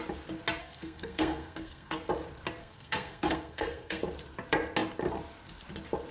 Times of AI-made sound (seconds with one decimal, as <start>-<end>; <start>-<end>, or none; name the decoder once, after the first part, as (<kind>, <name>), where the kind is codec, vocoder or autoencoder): 0.6-2.1 (codec, SNAC); 2.6-4.0